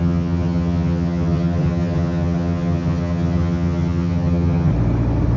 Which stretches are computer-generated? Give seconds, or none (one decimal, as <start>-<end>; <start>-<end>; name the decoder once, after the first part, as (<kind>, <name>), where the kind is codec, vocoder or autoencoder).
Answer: 0.0-4.7 (vocoder, HiFi-GAN)